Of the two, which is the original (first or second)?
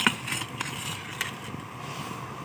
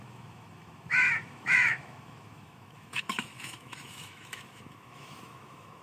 first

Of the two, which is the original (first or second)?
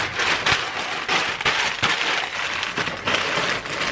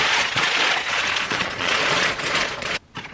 first